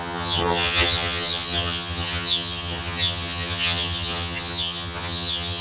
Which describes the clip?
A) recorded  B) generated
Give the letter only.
B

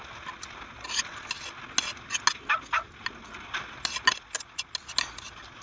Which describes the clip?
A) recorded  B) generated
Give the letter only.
A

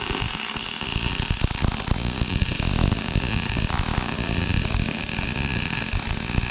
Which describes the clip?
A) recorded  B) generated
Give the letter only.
A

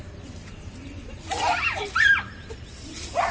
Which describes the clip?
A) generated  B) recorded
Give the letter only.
B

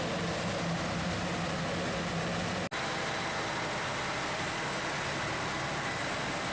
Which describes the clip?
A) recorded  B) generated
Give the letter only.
A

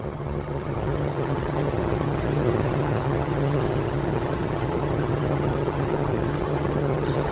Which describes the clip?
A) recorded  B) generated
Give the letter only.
B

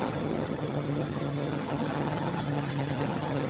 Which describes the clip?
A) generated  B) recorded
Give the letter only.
A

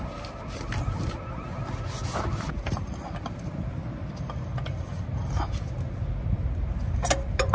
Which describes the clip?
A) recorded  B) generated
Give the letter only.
A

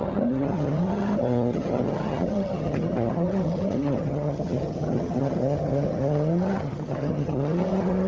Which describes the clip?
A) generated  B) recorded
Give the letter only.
A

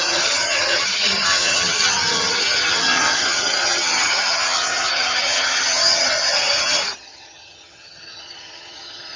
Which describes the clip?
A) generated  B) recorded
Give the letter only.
A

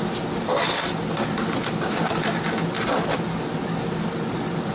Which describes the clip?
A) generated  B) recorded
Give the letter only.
B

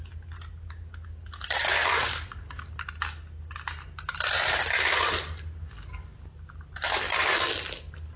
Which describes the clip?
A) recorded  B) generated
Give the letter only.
A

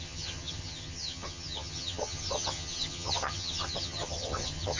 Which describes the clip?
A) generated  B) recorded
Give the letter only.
A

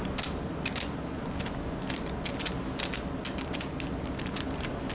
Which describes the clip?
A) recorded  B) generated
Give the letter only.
A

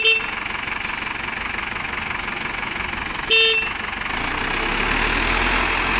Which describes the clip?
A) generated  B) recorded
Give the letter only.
B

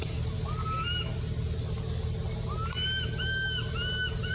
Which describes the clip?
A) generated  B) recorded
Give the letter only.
B